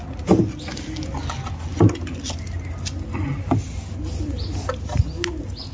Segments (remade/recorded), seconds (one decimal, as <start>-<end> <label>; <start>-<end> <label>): 0.0-5.7 recorded